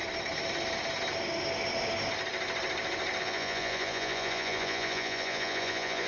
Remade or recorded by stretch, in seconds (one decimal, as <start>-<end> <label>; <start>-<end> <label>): 0.0-3.2 recorded; 3.2-6.1 remade